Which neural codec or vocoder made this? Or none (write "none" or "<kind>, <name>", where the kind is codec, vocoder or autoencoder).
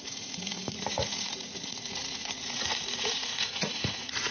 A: vocoder, Vocos